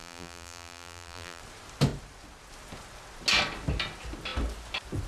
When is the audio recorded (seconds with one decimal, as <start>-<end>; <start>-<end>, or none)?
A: 1.4-5.1